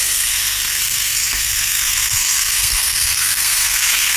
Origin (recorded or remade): remade